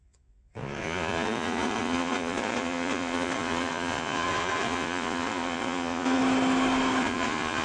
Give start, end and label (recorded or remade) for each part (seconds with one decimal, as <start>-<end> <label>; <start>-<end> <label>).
0.0-6.2 remade; 6.2-7.0 recorded; 7.0-7.6 remade